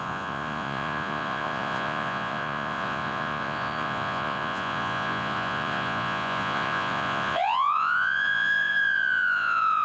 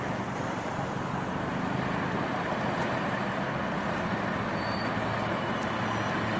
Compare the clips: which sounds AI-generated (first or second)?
first